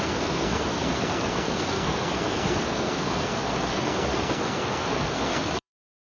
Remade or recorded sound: remade